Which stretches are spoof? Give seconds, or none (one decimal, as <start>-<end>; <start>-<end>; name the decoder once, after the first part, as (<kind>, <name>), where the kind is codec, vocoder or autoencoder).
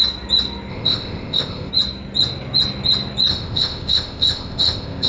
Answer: 0.7-1.7 (codec, ZipCodec); 3.3-5.1